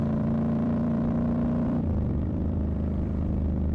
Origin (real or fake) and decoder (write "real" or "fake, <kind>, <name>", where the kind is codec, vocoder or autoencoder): fake, vocoder, BigVGAN v2